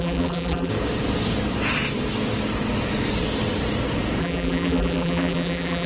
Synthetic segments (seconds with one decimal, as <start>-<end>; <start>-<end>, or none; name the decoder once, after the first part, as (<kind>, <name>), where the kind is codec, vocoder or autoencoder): 0.0-0.7 (vocoder, BigVGAN v2); 4.2-5.9